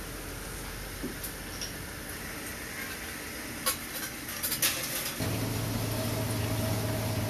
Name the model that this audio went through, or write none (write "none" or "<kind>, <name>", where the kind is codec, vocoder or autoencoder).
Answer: none